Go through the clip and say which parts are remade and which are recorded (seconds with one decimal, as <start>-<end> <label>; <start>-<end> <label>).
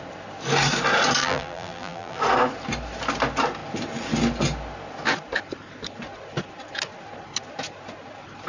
0.0-1.2 recorded; 1.2-2.2 remade; 2.2-8.5 recorded